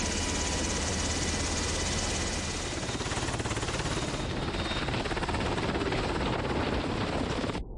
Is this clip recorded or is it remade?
recorded